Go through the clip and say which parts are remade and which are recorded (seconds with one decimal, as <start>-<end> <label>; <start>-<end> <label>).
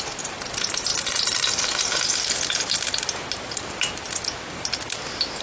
0.0-5.4 recorded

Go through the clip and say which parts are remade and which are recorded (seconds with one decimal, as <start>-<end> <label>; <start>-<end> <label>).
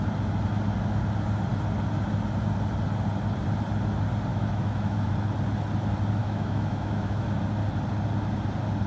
0.0-4.3 recorded; 4.3-5.1 remade; 5.1-6.2 recorded; 6.2-7.4 remade; 7.4-8.9 recorded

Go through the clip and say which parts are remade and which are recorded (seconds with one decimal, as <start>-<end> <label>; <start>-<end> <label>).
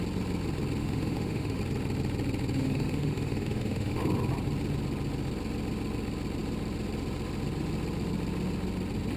0.0-0.8 recorded; 0.8-1.6 remade; 1.6-2.6 recorded; 2.6-4.0 remade; 4.0-9.2 recorded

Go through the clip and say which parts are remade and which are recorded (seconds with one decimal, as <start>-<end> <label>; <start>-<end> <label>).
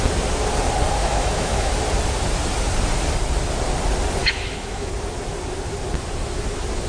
0.0-1.0 recorded; 1.0-1.7 remade; 1.7-4.2 recorded; 4.2-4.9 remade; 4.9-6.9 recorded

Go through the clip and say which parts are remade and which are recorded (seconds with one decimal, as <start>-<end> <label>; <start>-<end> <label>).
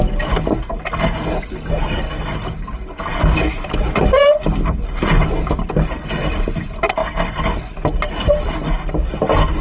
0.0-9.6 recorded